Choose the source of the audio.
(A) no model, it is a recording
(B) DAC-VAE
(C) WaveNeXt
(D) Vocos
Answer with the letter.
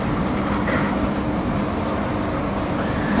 A